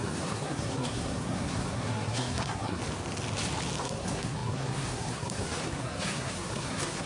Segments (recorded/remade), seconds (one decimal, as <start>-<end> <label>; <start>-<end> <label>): 0.0-2.8 remade; 2.8-3.8 recorded; 3.8-7.1 remade